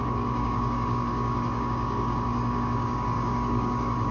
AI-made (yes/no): yes